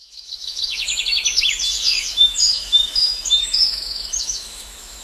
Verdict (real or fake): fake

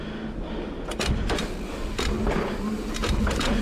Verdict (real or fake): real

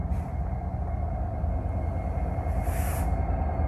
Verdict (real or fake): real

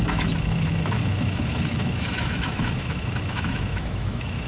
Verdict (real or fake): fake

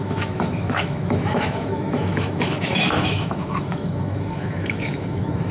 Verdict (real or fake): fake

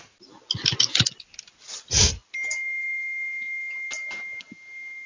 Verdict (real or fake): real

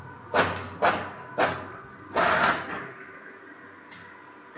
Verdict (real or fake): real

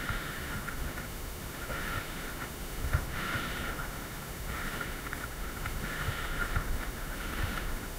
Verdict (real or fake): fake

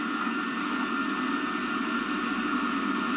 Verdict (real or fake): real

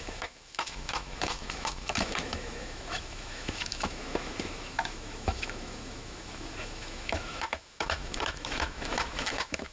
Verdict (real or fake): fake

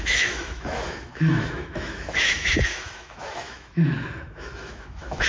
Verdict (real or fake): fake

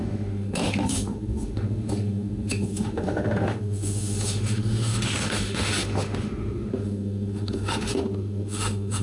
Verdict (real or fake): fake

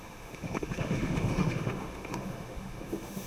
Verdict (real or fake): fake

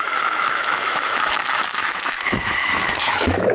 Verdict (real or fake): fake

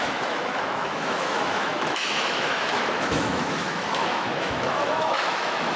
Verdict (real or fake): fake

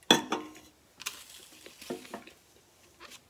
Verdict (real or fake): real